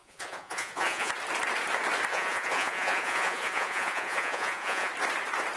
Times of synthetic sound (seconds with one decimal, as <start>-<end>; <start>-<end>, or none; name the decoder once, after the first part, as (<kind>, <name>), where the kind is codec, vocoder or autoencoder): 0.0-1.1 (vocoder, Vocos); 2.1-4.9